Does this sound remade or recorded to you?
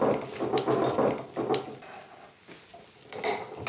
recorded